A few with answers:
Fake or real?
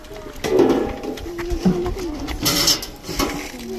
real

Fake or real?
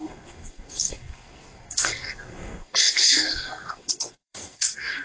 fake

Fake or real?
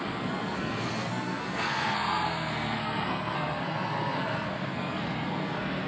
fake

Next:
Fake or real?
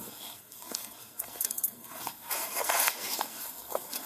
fake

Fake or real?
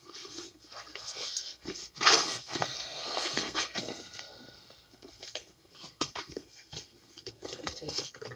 fake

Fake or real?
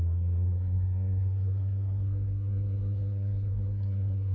fake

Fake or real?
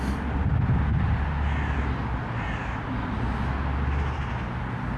real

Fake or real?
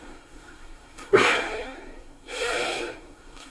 fake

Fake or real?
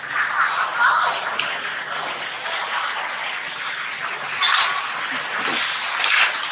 real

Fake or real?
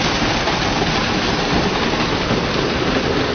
real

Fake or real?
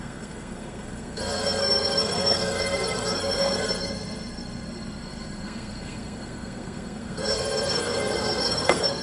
fake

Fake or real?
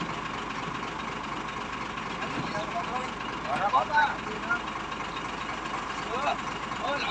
real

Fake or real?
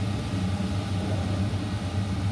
real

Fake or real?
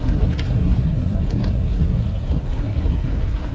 fake